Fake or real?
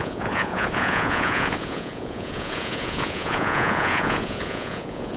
fake